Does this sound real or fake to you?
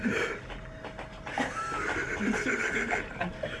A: real